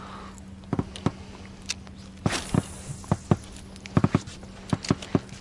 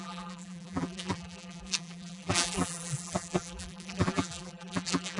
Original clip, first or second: first